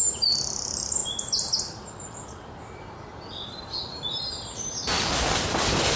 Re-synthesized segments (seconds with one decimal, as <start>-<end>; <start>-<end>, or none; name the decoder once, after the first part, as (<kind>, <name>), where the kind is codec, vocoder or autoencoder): none